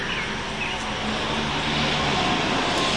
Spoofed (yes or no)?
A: no